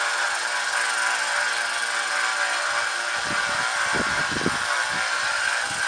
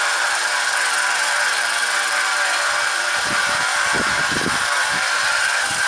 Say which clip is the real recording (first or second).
first